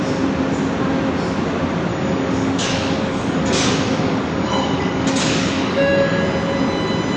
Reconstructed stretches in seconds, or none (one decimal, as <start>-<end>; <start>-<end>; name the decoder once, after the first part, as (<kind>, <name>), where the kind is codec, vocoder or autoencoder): 1.9-6.2 (codec, DAC)